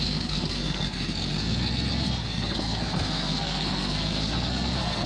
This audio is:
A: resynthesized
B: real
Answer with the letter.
A